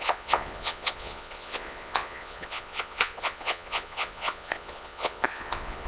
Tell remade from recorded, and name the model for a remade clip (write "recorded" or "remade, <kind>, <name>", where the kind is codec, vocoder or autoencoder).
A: remade, vocoder, Vocos